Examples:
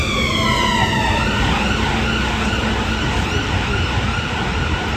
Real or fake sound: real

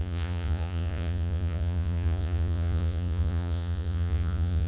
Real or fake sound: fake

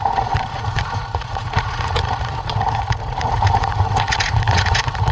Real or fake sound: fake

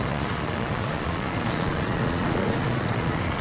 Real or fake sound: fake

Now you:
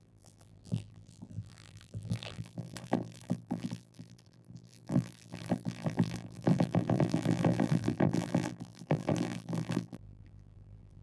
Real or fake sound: fake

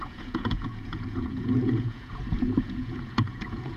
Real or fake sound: fake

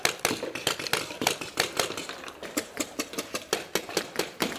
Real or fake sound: real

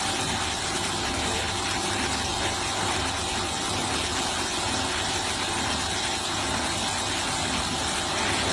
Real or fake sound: real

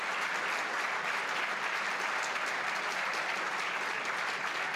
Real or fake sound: real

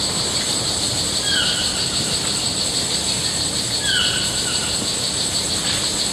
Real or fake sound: real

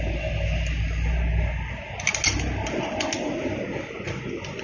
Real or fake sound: real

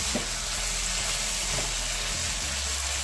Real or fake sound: real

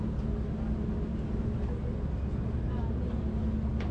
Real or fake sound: real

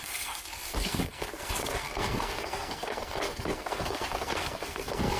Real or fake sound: fake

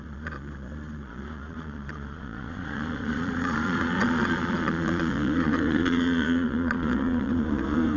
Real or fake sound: fake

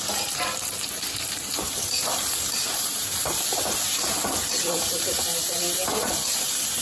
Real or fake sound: fake